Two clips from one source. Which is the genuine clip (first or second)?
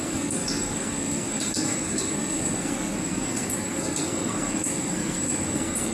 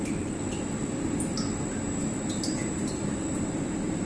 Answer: second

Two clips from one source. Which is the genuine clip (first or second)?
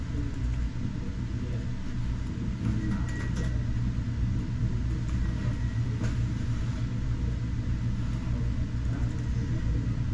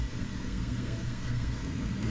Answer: first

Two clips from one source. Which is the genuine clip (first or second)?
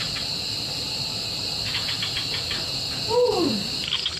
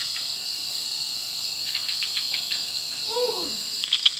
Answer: first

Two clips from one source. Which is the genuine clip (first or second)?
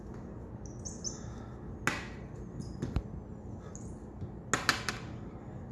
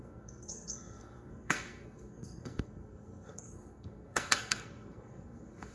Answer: first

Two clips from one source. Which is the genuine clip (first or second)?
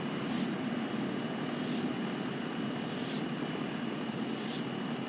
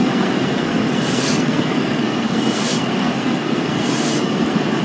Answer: first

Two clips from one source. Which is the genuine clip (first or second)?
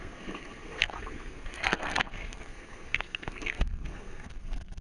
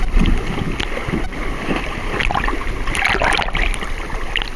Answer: second